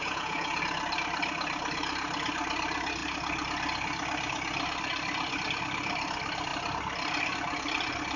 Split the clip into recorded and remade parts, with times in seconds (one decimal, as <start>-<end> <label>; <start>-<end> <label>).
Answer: 0.0-0.6 remade; 0.6-8.2 recorded